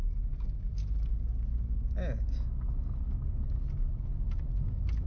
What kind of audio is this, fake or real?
real